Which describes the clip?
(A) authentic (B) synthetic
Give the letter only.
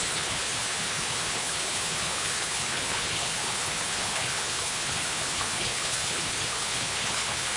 B